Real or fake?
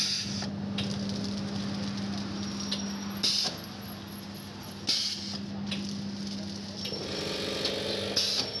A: real